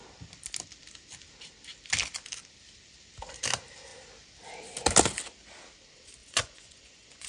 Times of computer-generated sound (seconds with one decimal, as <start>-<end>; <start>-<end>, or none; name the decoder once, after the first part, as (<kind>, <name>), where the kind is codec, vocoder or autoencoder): 6.2-7.3 (vocoder, Vocos)

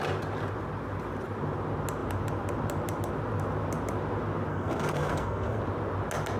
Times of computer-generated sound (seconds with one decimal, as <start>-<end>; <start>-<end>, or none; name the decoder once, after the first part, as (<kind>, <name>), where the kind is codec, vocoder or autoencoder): 4.5-5.6 (codec, SNAC)